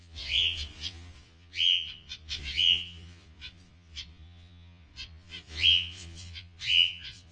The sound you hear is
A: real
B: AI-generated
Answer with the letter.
B